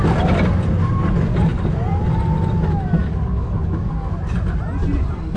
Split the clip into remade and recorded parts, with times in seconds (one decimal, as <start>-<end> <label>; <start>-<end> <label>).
0.0-3.0 recorded; 3.0-4.1 remade; 4.1-5.4 recorded